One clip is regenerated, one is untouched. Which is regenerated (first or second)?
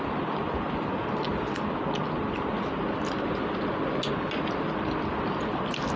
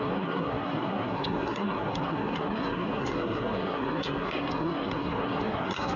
second